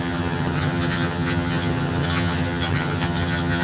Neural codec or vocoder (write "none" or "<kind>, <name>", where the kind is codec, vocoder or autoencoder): vocoder, HiFi-GAN